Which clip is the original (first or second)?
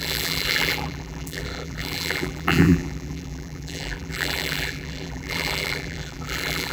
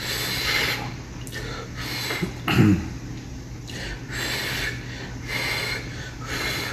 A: second